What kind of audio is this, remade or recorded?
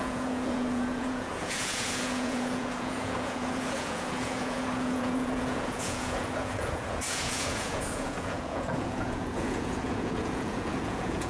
remade